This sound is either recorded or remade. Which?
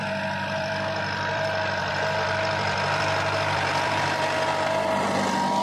remade